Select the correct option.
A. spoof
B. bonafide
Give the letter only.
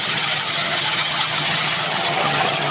A